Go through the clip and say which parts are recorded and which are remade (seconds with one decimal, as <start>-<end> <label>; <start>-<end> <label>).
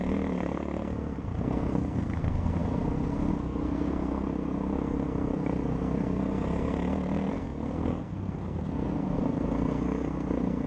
0.0-10.7 remade